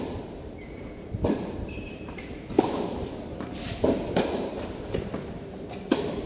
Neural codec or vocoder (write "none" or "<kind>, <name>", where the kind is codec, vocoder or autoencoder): vocoder, BigVGAN v2